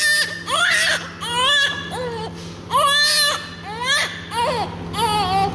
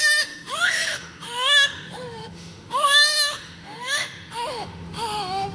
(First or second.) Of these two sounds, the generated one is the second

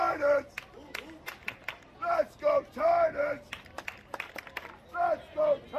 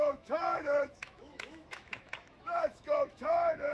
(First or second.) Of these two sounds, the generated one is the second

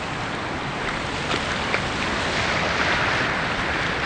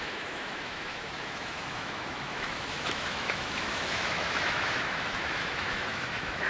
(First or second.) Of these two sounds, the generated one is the second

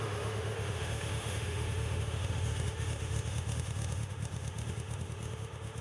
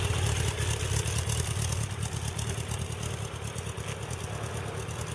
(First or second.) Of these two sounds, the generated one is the first